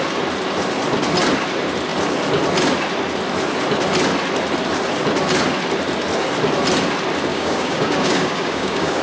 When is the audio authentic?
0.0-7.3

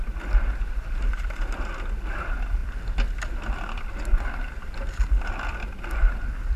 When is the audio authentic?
0.0-6.6

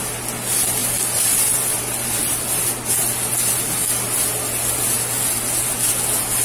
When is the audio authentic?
0.0-6.4

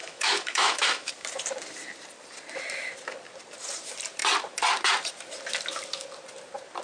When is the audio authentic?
1.1-6.8

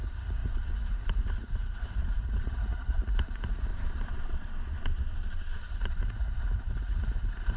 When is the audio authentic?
3.7-5.7

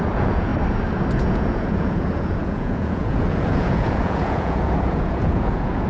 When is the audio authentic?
0.5-1.2

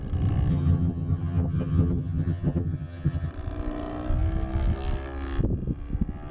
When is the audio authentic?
0.0-0.5; 3.3-6.3